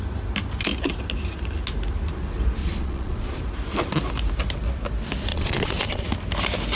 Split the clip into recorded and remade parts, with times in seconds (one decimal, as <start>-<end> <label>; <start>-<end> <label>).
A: 0.0-2.6 recorded; 2.6-3.4 remade; 3.4-5.3 recorded; 5.3-6.1 remade; 6.1-6.8 recorded